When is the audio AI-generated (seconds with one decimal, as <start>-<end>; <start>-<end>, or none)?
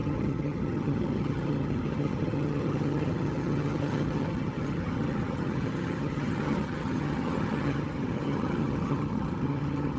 0.0-10.0